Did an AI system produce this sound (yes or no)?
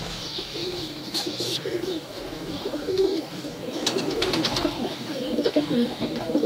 yes